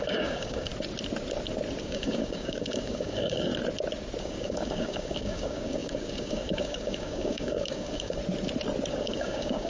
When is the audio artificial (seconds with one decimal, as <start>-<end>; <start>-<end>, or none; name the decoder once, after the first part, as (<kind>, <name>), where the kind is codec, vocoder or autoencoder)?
0.0-0.7 (codec, DAC); 1.8-3.5; 4.2-8.2; 8.9-9.7